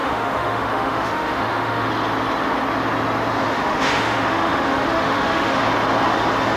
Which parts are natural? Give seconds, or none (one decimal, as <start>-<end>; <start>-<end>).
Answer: 1.9-3.4; 5.6-6.6